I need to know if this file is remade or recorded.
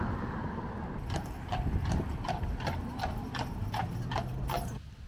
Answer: recorded